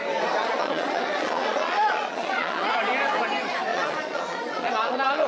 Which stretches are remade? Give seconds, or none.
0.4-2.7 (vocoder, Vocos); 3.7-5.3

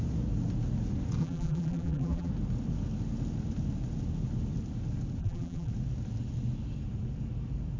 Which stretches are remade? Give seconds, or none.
1.2-2.3 (vocoder, BigVGAN v2); 5.2-5.7